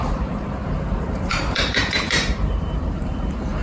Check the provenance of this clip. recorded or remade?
remade